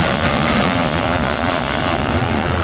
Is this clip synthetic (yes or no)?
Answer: yes